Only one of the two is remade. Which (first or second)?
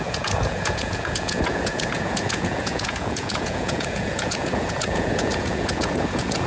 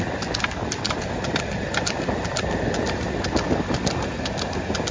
first